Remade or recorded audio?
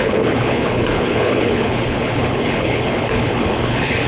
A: remade